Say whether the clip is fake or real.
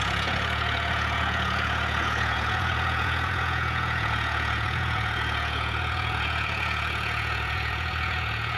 fake